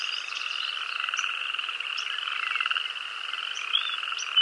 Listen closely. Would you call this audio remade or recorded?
recorded